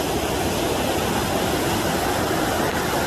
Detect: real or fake real